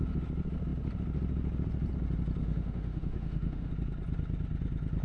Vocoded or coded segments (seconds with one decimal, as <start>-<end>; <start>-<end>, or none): 2.4-3.7